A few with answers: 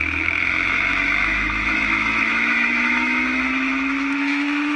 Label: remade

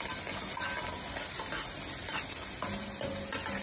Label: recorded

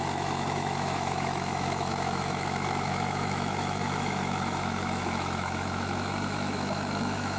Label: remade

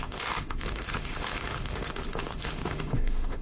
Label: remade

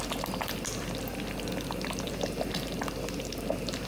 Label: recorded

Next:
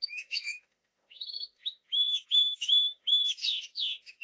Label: remade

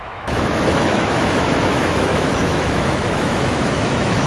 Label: remade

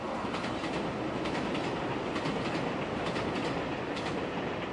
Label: recorded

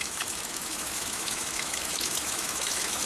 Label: remade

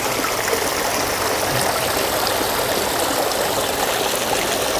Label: recorded